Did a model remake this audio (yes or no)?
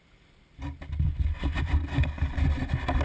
no